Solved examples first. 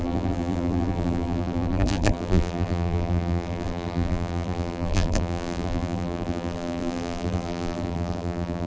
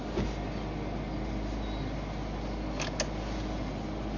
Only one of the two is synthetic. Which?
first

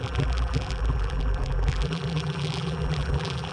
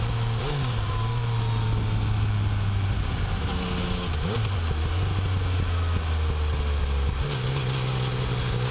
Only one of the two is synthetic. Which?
first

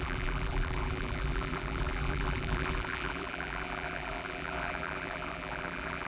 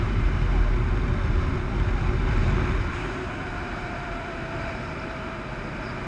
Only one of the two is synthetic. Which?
first